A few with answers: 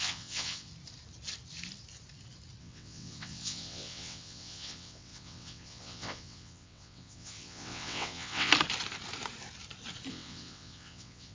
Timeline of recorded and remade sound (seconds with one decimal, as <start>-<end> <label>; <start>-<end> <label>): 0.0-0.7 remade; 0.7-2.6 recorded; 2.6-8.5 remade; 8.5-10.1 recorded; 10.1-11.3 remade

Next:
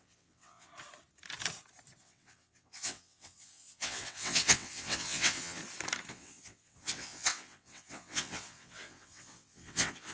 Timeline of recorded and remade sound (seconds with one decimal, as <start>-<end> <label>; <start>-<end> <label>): 0.0-0.7 remade; 0.7-2.0 recorded; 2.0-5.6 remade; 5.6-6.1 recorded; 6.1-10.1 remade

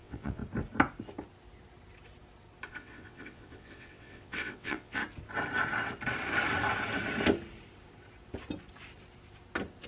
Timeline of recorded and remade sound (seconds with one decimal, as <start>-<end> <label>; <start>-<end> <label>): 0.0-0.4 remade; 0.4-2.7 recorded; 2.7-5.0 remade; 5.0-9.9 recorded

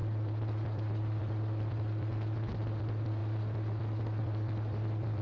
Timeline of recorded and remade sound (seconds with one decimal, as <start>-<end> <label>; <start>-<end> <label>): 0.0-5.2 recorded

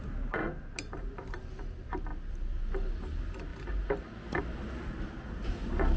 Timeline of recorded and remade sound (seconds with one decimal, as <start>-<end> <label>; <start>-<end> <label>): 0.0-6.0 recorded

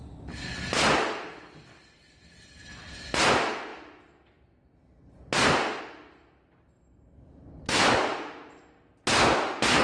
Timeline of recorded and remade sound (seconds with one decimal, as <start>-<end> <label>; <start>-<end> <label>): 0.0-9.8 recorded

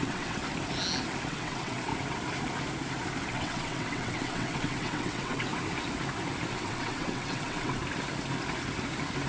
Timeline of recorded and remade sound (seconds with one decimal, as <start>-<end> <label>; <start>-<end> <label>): 0.0-0.4 remade; 0.4-1.3 recorded; 1.3-1.9 remade; 1.9-3.3 recorded; 3.3-5.5 remade; 5.5-6.5 recorded; 6.5-7.8 remade; 7.8-9.3 recorded